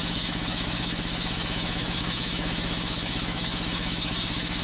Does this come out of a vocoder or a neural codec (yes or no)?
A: yes